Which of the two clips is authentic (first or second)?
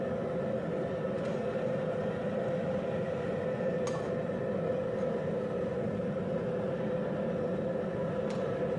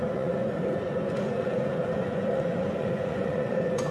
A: first